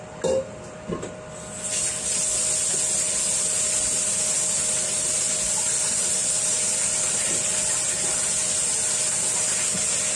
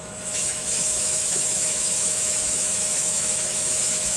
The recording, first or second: first